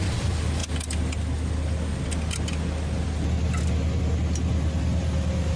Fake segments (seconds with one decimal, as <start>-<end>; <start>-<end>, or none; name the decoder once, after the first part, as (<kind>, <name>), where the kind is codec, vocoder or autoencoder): none